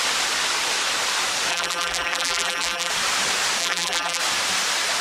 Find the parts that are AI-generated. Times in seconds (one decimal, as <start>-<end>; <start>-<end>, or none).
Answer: 1.5-2.9; 3.6-4.2